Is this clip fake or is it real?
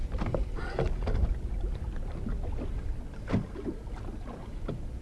real